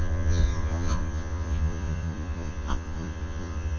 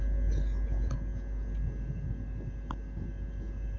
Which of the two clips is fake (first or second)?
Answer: first